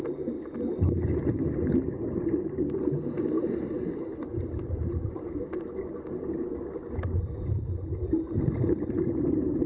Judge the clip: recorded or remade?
recorded